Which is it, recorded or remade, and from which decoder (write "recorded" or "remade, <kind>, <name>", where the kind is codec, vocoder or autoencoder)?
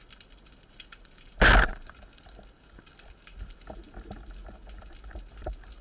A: recorded